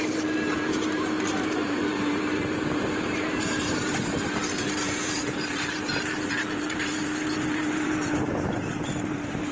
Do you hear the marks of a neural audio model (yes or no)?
yes